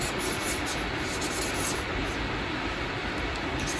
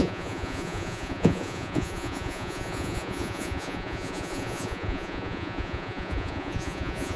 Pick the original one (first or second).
first